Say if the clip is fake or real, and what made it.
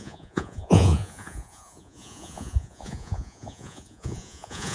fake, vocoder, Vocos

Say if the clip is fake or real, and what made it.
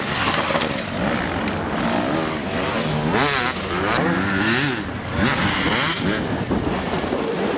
real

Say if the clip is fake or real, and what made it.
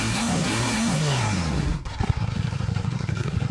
fake, codec, SNAC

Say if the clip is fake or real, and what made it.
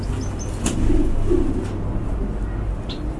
real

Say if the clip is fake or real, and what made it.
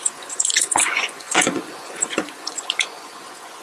fake, vocoder, Vocos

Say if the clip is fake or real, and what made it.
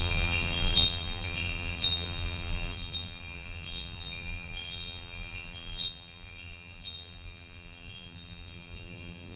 fake, vocoder, BigVGAN v2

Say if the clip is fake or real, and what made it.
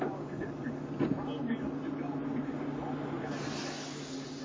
real